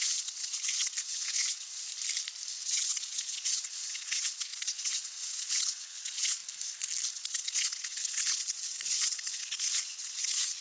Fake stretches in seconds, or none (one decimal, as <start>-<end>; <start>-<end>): 0.0-1.9; 2.5-6.4; 7.1-10.6